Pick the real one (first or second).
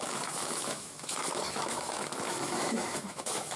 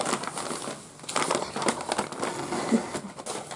second